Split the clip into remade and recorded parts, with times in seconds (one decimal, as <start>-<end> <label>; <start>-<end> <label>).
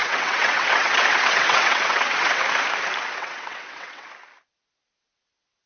0.0-2.4 remade; 2.4-3.2 recorded; 3.2-4.1 remade; 4.1-5.7 recorded